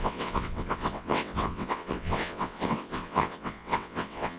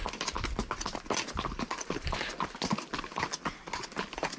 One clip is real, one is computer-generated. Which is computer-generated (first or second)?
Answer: first